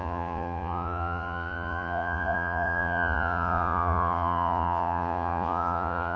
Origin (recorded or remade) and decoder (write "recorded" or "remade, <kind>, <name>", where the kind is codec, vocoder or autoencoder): remade, vocoder, Vocos